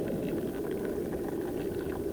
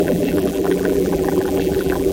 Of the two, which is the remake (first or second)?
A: second